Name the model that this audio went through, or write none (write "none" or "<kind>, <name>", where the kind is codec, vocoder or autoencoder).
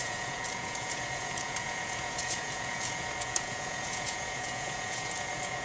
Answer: vocoder, Vocos